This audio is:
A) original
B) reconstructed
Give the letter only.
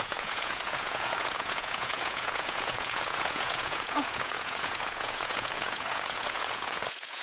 B